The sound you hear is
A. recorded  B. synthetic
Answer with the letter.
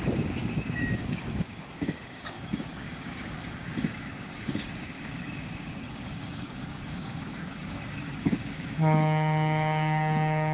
B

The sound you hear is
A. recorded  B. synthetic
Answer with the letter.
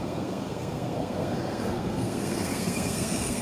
B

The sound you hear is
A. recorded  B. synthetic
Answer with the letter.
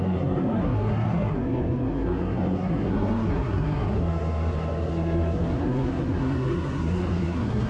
B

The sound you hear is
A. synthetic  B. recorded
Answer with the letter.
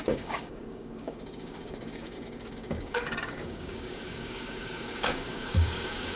A